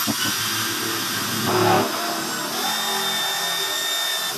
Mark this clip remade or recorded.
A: recorded